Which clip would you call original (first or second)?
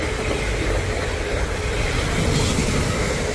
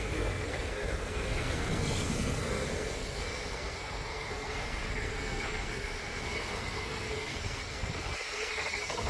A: first